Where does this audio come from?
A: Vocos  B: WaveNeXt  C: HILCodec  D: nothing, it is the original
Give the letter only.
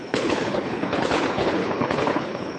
C